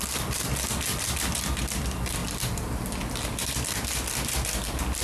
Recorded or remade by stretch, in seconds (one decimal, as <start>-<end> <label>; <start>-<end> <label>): 0.0-2.2 remade; 2.2-3.1 recorded; 3.1-5.0 remade